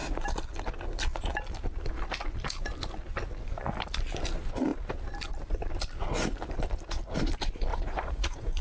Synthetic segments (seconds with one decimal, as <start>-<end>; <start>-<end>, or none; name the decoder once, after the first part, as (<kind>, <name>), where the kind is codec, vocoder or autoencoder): 7.7-8.6 (vocoder, Vocos)